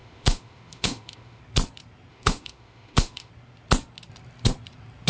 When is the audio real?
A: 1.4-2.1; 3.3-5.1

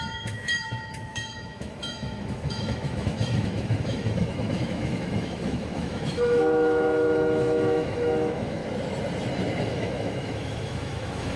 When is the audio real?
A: 8.6-9.6

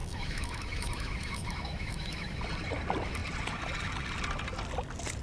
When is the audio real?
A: 2.4-5.2

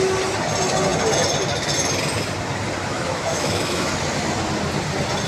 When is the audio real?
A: 0.0-2.9; 3.9-5.3

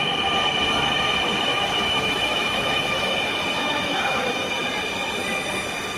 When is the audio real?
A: 0.0-1.5; 3.1-3.6; 4.5-6.0

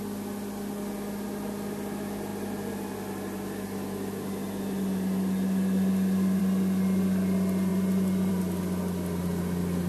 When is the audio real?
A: 0.0-9.9